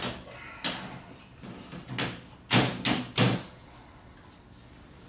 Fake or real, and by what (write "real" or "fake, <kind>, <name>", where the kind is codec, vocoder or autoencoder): real